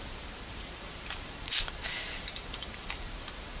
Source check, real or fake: fake